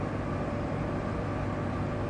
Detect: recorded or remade recorded